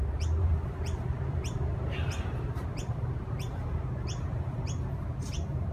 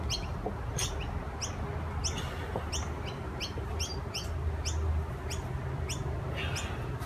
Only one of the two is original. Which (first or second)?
second